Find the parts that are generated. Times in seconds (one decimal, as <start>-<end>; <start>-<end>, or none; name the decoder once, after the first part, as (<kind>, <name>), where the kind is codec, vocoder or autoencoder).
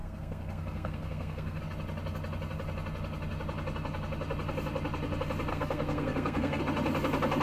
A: 0.0-1.6 (codec, SNAC); 5.5-6.6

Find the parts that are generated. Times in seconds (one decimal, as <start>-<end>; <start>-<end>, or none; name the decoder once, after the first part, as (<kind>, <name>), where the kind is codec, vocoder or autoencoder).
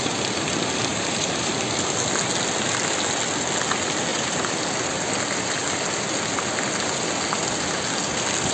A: 0.9-1.5 (vocoder, BigVGAN v2); 4.1-4.6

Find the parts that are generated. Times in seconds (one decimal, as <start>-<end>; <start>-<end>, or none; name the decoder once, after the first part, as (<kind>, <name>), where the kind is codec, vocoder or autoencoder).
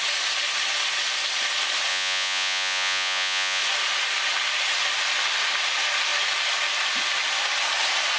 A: 1.9-3.6 (vocoder, Vocos)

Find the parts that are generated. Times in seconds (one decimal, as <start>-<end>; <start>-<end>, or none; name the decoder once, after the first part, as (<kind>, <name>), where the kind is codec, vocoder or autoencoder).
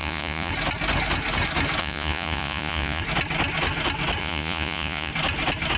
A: 0.0-0.5 (vocoder, Vocos); 1.8-3.0; 4.2-5.1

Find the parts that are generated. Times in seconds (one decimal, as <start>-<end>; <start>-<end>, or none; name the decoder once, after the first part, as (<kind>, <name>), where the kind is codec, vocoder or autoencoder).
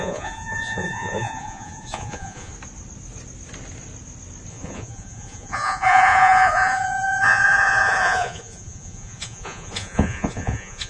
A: 0.0-2.5 (vocoder, Vocos); 4.5-10.9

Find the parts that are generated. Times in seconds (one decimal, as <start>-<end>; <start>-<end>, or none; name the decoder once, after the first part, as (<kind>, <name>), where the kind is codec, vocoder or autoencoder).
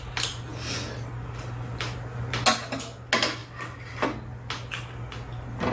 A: none